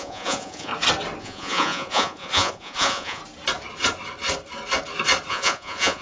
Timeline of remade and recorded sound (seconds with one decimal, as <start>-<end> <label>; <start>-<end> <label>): 0.0-0.7 remade; 0.7-1.2 recorded; 1.2-3.2 remade; 3.2-5.3 recorded; 5.3-6.0 remade